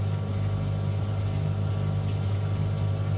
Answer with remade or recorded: recorded